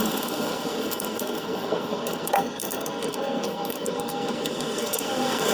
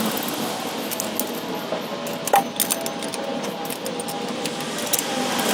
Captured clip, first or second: second